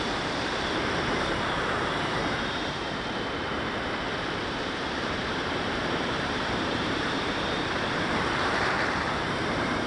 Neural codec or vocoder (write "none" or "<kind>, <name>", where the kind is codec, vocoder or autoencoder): vocoder, BigVGAN v2